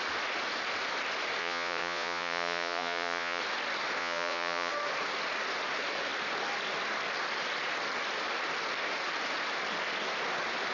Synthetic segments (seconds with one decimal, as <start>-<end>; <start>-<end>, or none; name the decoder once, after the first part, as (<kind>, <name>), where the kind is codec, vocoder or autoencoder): 1.4-3.4 (vocoder, Vocos); 4.0-4.7